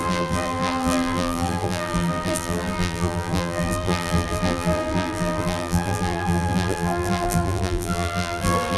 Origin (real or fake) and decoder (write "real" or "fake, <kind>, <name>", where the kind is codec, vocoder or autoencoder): fake, vocoder, BigVGAN v2